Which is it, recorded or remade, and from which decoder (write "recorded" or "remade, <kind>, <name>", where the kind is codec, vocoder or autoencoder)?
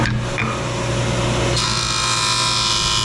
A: recorded